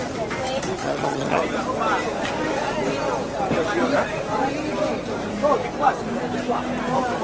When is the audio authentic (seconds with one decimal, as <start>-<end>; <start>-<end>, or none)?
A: 0.0-0.8; 1.4-7.2